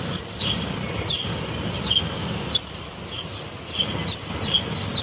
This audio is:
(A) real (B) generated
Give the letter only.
A